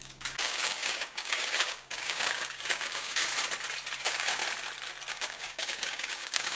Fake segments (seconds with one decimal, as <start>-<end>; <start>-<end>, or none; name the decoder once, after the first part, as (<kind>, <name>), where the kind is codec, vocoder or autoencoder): 0.0-3.3 (codec, DAC); 4.0-4.4; 5.1-6.6